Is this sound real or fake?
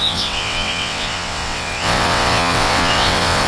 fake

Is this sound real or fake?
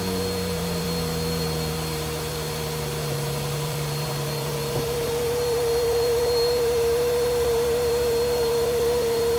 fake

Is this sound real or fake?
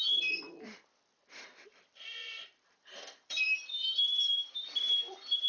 fake